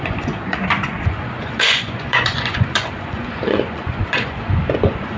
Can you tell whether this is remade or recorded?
remade